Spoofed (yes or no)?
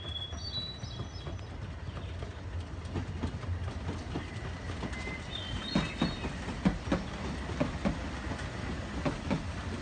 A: no